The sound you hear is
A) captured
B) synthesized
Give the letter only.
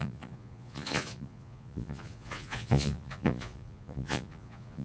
B